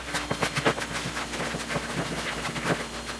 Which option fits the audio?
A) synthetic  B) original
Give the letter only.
B